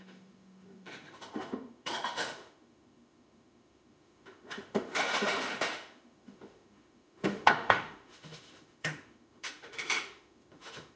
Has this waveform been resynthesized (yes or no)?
yes